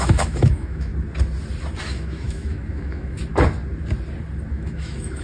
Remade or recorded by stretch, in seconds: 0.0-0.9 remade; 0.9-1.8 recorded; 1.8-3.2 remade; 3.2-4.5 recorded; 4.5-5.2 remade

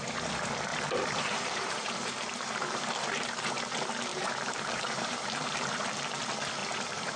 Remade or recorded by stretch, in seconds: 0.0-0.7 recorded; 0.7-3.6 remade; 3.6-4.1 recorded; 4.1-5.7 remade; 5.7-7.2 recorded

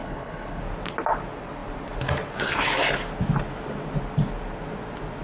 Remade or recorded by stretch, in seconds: 0.0-0.6 remade; 0.6-5.2 recorded

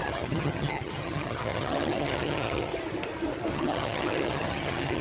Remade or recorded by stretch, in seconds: 0.0-2.7 remade; 2.7-3.5 recorded; 3.5-5.0 remade

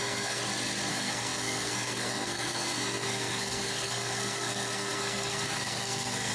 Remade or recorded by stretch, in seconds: 0.0-0.4 remade; 0.4-0.9 recorded; 0.9-6.3 remade

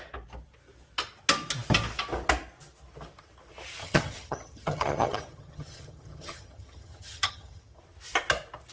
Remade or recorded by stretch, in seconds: 0.0-3.8 recorded; 3.8-7.8 remade; 7.8-8.7 recorded